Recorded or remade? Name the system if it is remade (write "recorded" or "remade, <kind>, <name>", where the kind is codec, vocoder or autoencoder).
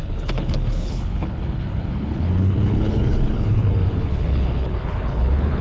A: remade, codec, HILCodec